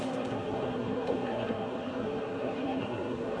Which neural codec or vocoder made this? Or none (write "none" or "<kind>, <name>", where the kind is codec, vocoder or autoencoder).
codec, SNAC